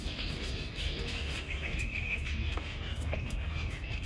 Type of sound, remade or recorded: remade